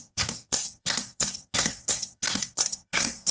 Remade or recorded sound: remade